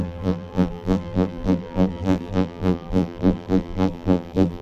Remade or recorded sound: remade